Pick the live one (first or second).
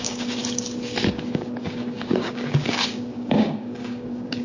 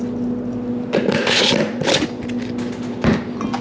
second